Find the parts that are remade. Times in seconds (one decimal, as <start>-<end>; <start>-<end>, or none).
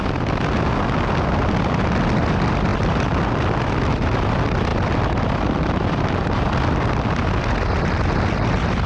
none